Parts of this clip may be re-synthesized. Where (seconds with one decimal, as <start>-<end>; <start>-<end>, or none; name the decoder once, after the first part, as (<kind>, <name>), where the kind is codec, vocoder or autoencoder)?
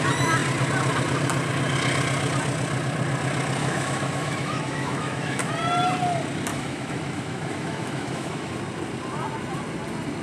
3.6-5.5 (autoencoder, DAC-VAE); 6.5-8.5